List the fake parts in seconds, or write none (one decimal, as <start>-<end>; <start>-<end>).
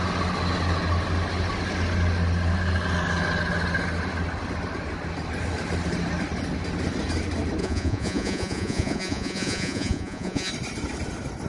7.6-10.5